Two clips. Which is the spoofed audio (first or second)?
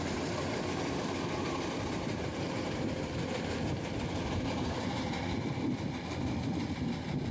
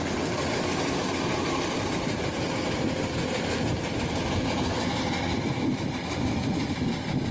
first